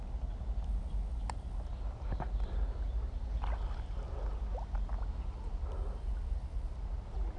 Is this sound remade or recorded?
recorded